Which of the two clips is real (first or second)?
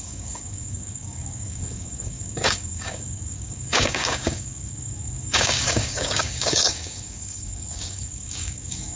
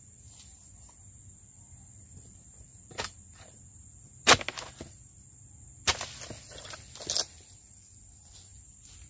second